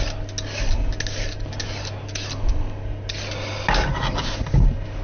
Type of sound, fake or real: real